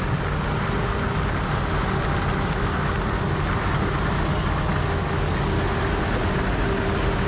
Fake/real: real